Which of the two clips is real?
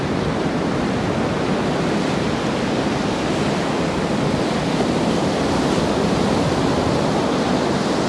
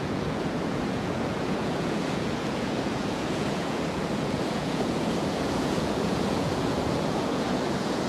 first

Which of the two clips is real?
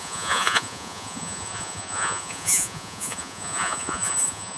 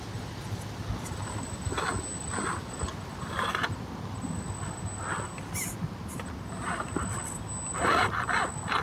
second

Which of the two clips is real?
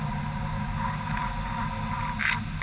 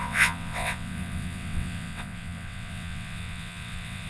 first